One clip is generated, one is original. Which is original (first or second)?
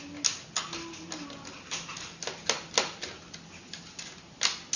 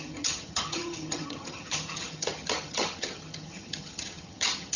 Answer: first